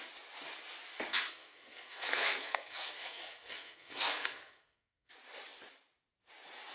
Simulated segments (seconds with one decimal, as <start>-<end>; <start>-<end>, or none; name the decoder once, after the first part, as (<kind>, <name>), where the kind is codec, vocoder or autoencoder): 1.1-5.1 (codec, SNAC)